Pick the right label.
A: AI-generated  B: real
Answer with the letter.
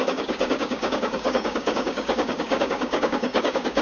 A